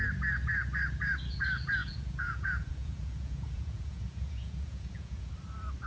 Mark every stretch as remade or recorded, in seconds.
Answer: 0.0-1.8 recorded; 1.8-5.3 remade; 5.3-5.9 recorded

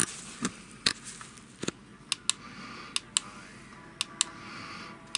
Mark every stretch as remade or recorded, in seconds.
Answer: 0.0-5.2 recorded

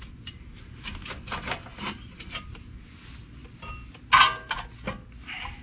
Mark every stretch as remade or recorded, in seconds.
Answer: 0.0-1.7 recorded; 1.7-2.4 remade; 2.4-5.6 recorded

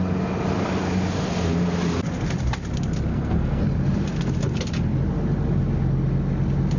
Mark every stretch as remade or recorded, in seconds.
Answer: 0.0-3.1 recorded; 3.1-3.6 remade; 3.6-6.8 recorded

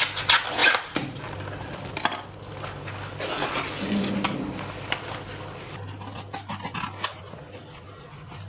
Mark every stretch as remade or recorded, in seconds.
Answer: 0.0-0.6 recorded; 0.6-1.4 remade; 1.4-8.5 recorded

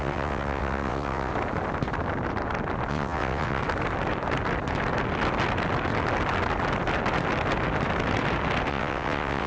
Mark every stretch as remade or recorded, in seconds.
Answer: 0.0-1.3 remade; 1.3-2.9 recorded; 2.9-3.6 remade; 3.6-8.7 recorded; 8.7-9.5 remade

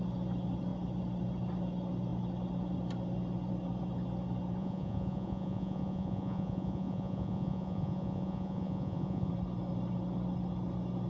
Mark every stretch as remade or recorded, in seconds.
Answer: 0.0-4.6 recorded; 4.6-9.3 remade; 9.3-11.1 recorded

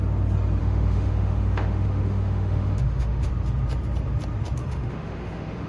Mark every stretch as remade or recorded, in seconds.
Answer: 0.0-0.6 recorded; 0.6-3.3 remade; 3.3-4.6 recorded; 4.6-5.7 remade